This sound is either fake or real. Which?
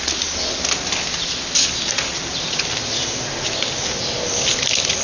real